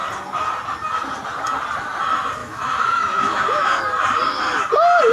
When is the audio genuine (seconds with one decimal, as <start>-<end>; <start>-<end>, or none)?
0.0-2.4; 3.8-5.1